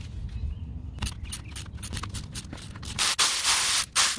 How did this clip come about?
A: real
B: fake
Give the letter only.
A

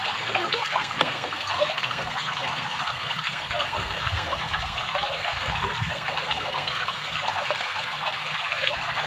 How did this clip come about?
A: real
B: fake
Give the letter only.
B